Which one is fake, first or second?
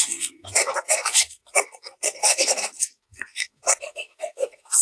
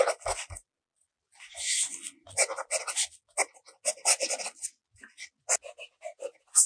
first